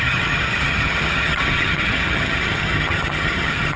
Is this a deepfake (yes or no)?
yes